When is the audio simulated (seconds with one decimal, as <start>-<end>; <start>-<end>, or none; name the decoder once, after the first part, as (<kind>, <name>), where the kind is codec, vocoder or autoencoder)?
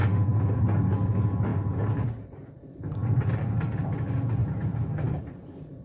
1.5-4.0 (vocoder, BigVGAN v2); 4.4-4.9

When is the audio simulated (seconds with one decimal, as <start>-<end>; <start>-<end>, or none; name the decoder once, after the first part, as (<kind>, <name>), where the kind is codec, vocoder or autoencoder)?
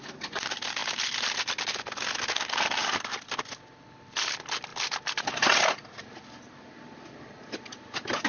none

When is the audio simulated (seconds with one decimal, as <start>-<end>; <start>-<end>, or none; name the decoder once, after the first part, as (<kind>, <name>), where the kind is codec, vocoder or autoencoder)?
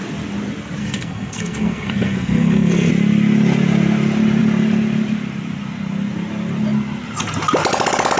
0.8-2.9 (codec, SNAC)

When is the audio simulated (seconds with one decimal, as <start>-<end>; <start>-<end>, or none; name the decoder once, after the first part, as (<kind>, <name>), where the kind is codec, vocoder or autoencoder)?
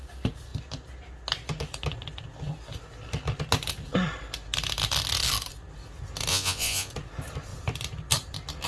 6.3-6.9 (vocoder, Vocos)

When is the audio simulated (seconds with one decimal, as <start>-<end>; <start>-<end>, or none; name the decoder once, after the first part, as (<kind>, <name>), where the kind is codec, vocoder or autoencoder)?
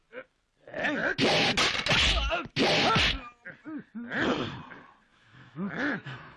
5.1-6.4 (autoencoder, DAC-VAE)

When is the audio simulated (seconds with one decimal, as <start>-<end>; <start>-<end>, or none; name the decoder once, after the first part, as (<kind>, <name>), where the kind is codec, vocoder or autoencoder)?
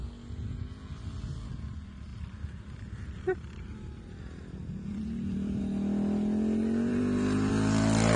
2.1-5.6 (vocoder, BigVGAN v2); 6.9-7.5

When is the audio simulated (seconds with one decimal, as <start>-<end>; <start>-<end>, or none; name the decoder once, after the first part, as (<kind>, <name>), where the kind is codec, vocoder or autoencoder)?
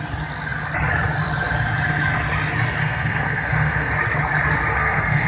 2.8-3.9 (codec, SNAC); 4.7-5.3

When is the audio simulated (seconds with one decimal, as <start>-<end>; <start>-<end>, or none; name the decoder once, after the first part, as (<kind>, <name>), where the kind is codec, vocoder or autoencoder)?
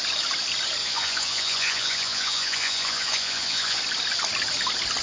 0.8-3.8 (vocoder, Vocos)